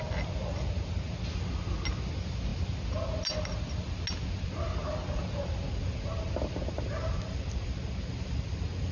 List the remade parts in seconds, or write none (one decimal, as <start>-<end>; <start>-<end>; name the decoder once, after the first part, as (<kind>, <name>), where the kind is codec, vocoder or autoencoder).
none